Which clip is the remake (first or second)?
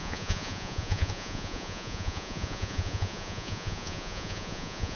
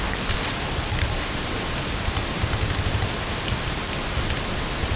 first